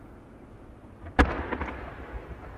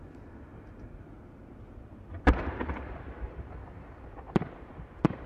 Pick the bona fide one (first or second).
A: first